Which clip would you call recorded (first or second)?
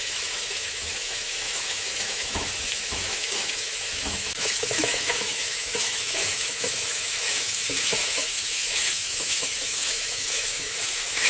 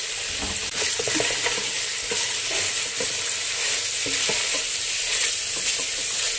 second